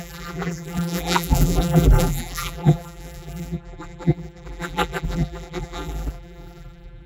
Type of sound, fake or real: fake